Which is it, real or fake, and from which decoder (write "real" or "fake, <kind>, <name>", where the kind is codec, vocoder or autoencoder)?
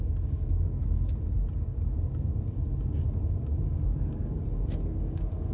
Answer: fake, codec, DAC